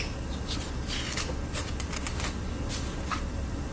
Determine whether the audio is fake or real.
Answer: real